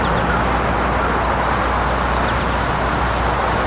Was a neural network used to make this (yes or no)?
no